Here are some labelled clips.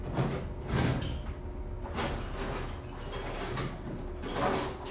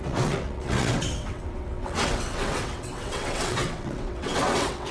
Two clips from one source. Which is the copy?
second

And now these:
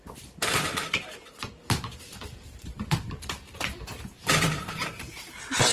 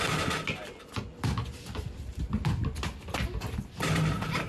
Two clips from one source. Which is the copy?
first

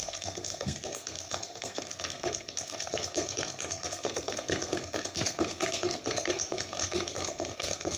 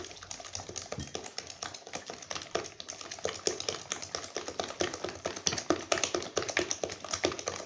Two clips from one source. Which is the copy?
first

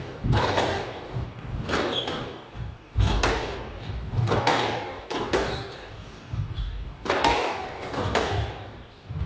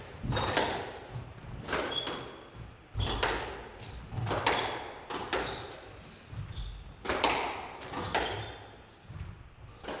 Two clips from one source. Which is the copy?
first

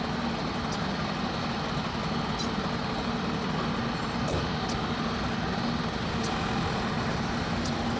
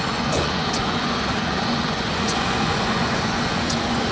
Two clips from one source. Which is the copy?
second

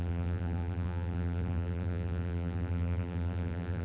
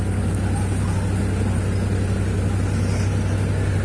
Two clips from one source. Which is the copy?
first